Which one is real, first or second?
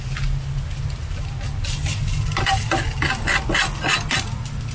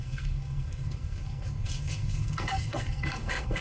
first